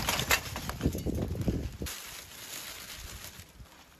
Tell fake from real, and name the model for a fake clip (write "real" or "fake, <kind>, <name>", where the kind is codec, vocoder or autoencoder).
real